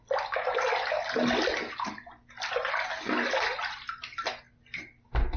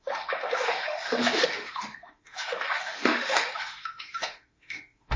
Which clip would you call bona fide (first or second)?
first